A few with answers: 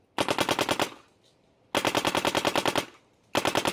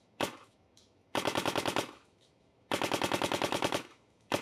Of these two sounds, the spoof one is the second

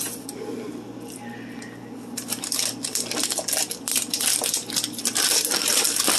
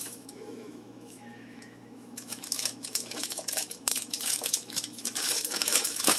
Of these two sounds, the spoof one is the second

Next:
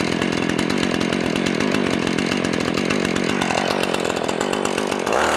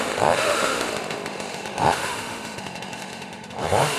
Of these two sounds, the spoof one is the second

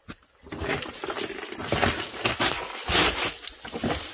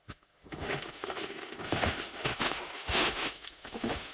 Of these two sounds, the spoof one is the second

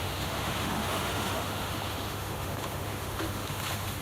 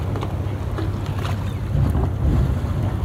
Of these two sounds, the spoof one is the first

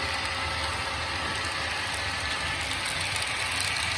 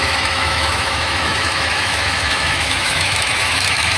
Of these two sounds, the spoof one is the second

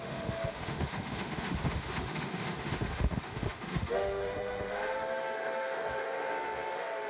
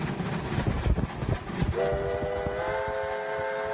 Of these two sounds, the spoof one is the first